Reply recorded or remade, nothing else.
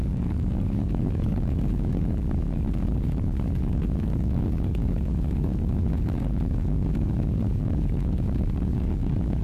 remade